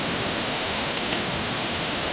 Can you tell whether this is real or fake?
fake